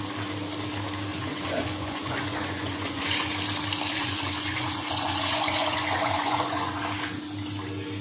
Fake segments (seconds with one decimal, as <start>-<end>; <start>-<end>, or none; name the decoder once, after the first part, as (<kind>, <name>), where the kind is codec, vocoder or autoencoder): 1.1-3.3 (vocoder, Vocos); 3.9-6.8